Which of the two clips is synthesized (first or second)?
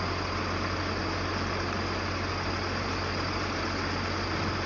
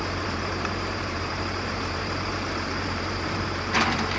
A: second